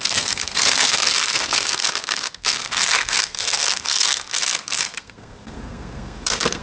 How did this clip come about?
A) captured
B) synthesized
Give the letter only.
B